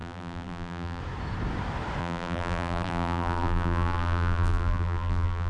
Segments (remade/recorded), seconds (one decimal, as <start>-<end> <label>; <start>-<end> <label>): 0.0-1.0 remade; 1.0-2.0 recorded; 2.0-5.5 remade